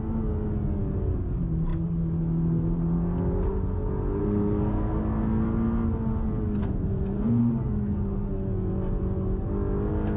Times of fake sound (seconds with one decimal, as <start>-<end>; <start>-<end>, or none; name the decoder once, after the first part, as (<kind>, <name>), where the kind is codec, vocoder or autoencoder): 4.2-5.0 (codec, SNAC); 6.6-7.4